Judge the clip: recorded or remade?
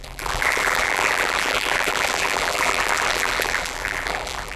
remade